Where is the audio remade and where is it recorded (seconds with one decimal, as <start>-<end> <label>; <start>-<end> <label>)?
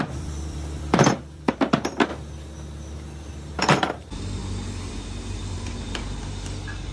0.0-2.1 remade; 2.1-3.6 recorded; 3.6-4.4 remade; 4.4-5.8 recorded; 5.8-6.9 remade